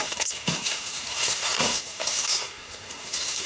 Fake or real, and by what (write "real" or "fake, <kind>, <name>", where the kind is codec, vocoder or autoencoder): fake, codec, SNAC